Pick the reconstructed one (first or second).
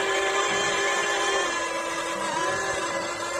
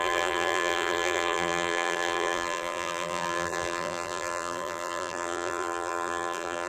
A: second